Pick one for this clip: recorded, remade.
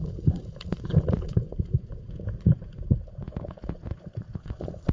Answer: remade